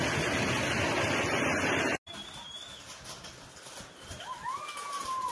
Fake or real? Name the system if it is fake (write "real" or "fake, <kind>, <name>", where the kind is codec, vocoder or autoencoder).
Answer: real